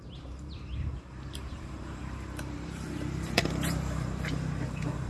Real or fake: fake